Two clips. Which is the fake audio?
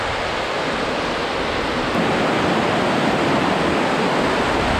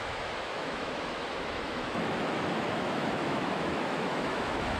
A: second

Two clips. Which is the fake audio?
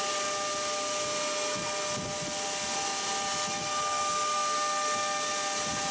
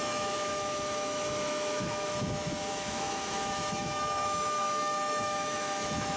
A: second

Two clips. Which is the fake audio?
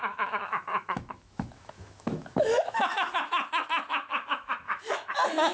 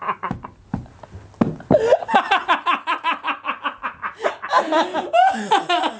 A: first